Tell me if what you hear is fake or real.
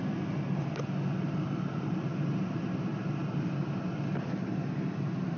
real